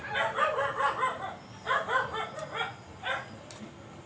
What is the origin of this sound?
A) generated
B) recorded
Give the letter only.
B